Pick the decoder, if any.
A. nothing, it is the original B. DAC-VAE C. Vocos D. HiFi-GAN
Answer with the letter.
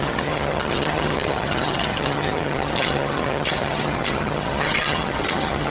D